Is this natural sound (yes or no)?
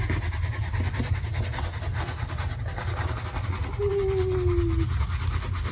yes